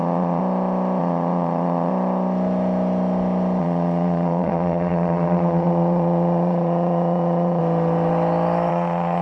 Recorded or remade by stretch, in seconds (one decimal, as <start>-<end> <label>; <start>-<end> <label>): 0.0-0.4 remade; 0.4-1.0 recorded; 1.0-1.9 remade; 1.9-3.6 recorded; 3.6-7.6 remade; 7.6-8.7 recorded; 8.7-9.2 remade